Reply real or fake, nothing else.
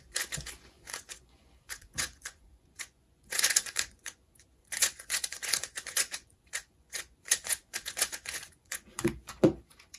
fake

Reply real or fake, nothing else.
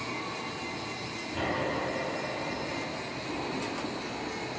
real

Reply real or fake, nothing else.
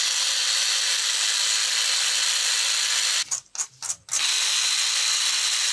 real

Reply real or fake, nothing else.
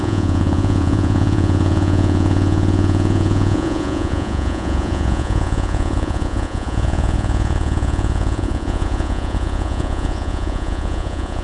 fake